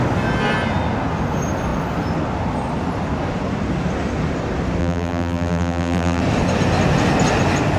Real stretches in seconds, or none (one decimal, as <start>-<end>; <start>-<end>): 0.0-4.8; 6.2-7.8